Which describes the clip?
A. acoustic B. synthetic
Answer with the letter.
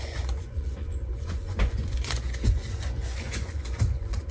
B